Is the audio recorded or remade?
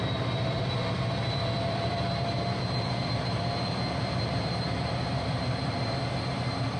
remade